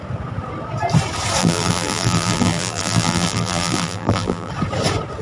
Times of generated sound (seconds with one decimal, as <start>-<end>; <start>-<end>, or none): 1.4-4.5